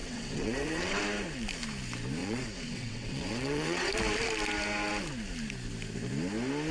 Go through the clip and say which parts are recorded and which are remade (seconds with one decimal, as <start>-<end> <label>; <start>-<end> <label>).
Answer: 0.0-1.0 remade; 1.0-2.2 recorded; 2.2-3.9 remade; 3.9-6.7 recorded